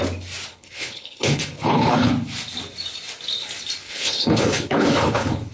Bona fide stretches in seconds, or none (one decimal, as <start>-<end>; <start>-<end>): 0.0-0.5; 2.1-3.8